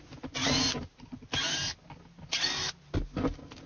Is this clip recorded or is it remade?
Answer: recorded